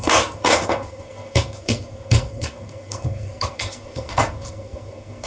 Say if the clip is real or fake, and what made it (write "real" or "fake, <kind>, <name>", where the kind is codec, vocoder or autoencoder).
fake, codec, SNAC